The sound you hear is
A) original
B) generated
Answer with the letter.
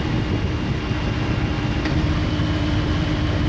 A